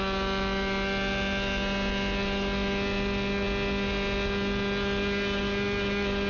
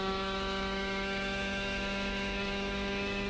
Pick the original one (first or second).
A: first